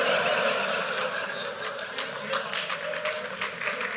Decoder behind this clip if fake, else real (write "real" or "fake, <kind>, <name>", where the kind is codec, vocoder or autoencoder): real